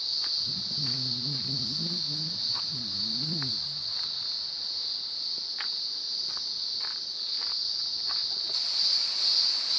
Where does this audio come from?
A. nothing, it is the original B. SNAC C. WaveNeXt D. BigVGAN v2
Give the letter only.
A